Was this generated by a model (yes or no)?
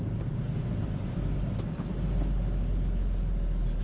no